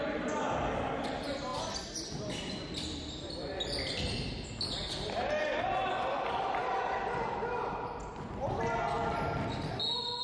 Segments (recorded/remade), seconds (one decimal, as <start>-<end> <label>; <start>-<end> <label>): 0.0-10.2 recorded